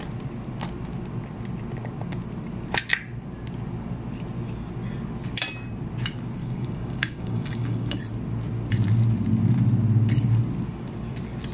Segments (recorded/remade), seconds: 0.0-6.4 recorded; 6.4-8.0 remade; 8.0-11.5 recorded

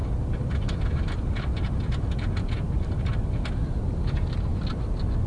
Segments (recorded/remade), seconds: 0.0-5.3 recorded

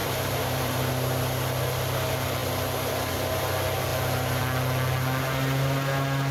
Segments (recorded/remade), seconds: 0.0-0.9 remade; 0.9-6.3 recorded

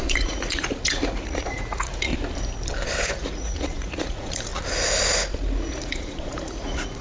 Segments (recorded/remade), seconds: 0.0-2.1 remade; 2.1-3.1 recorded; 3.1-4.5 remade; 4.5-5.7 recorded; 5.7-7.0 remade

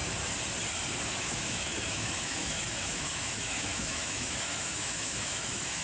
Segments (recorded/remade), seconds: 0.0-1.2 recorded; 1.2-5.8 remade